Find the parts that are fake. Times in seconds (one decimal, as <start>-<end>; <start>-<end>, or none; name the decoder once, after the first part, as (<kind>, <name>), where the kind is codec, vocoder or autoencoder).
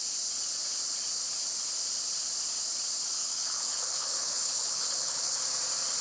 3.2-5.4 (codec, HILCodec)